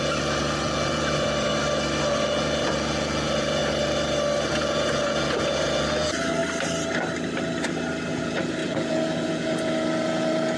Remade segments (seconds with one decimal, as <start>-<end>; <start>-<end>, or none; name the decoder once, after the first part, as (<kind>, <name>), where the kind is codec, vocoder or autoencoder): 0.0-1.5 (vocoder, Vocos); 2.0-3.6; 4.5-6.4; 8.1-10.6